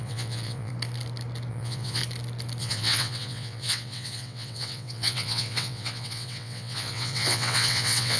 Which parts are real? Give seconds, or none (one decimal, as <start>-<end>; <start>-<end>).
0.7-1.5; 2.0-2.6